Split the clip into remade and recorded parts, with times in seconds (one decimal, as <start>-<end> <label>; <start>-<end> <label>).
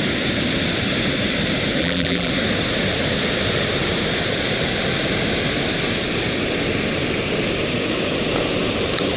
0.0-1.8 recorded; 1.8-2.3 remade; 2.3-9.2 recorded